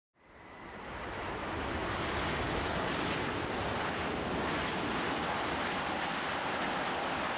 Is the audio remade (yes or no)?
no